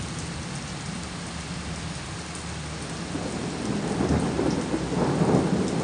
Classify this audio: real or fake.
real